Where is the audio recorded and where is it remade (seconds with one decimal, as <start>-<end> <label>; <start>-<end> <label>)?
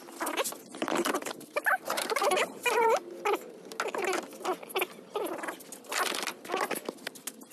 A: 0.0-0.7 recorded; 0.7-3.0 remade; 3.0-7.5 recorded